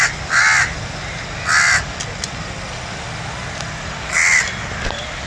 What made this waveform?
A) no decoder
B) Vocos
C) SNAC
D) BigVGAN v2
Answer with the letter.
A